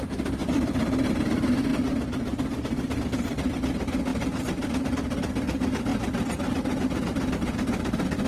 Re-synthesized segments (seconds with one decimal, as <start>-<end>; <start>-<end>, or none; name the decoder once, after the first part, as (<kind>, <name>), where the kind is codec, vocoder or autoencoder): 0.4-1.2 (vocoder, BigVGAN v2); 1.7-3.0; 4.1-4.8; 5.9-8.3